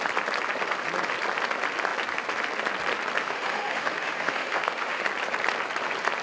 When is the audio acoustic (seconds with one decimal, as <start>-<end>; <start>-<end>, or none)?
0.0-3.2; 5.0-6.2